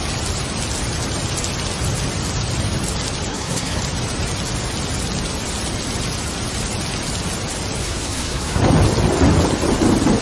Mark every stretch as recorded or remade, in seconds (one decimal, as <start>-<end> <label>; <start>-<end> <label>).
0.0-3.3 recorded; 3.3-3.8 remade; 3.8-7.8 recorded; 7.8-8.6 remade; 8.6-10.2 recorded